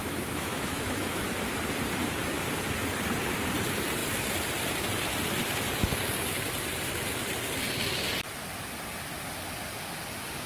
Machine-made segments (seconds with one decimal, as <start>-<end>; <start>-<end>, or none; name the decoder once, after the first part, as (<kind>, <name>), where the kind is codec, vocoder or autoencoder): 0.0-1.3 (autoencoder, DAC-VAE)